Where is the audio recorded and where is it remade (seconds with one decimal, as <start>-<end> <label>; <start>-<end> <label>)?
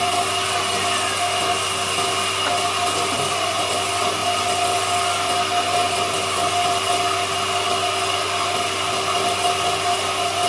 0.0-10.5 recorded